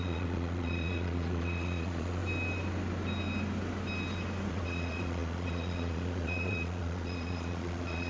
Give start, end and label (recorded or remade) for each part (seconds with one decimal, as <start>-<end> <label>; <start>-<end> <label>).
0.0-2.2 remade; 2.2-4.5 recorded; 4.5-8.1 remade